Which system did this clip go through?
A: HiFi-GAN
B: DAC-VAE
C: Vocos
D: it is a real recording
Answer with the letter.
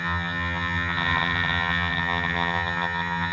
A